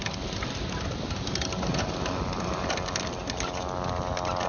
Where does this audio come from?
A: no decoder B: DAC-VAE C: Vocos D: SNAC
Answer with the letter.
A